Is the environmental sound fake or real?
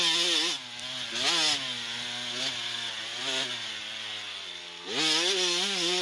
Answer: real